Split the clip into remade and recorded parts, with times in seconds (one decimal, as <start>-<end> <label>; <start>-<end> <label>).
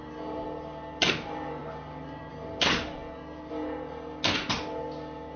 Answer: 0.0-5.4 recorded